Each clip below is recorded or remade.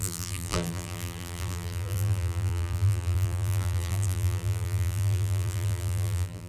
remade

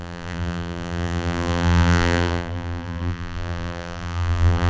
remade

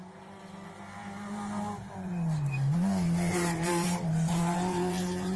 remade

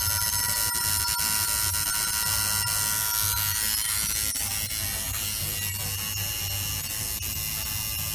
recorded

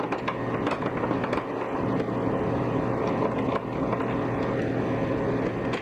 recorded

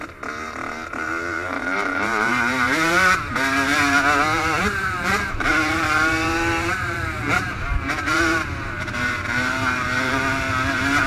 remade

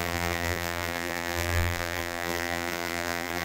remade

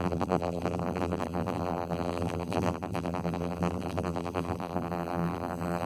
remade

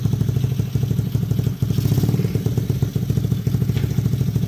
recorded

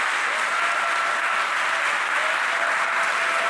recorded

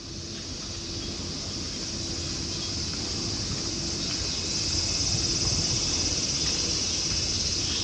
recorded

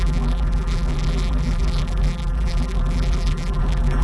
remade